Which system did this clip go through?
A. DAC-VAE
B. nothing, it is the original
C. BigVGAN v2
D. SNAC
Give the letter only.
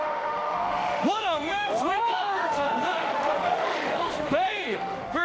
A